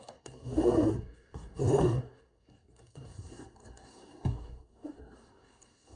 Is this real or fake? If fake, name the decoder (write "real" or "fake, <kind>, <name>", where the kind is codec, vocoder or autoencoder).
fake, codec, SNAC